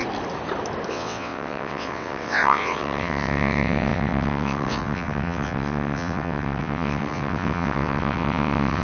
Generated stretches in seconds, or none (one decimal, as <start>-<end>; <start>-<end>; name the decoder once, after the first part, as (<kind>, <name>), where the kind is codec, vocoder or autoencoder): 0.9-8.8 (vocoder, WaveNeXt)